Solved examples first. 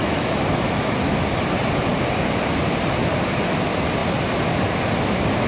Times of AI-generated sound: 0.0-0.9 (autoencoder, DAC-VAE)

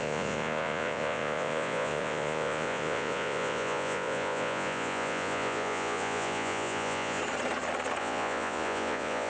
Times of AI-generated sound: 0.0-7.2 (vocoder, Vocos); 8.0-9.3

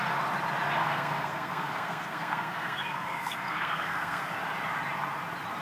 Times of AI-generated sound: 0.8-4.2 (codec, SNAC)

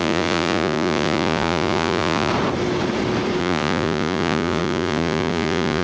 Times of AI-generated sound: 0.0-2.3 (vocoder, Vocos); 3.4-5.8

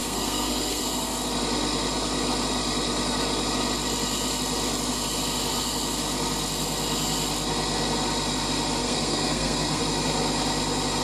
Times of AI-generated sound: 0.0-0.8 (codec, SNAC); 8.8-9.8